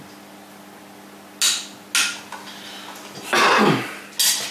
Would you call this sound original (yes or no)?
yes